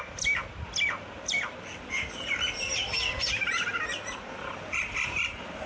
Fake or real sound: real